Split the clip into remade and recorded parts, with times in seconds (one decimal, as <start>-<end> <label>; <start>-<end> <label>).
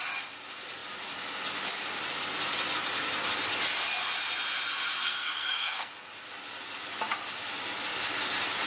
0.0-5.0 recorded; 5.0-5.9 remade; 5.9-8.7 recorded